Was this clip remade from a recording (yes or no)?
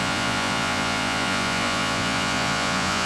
yes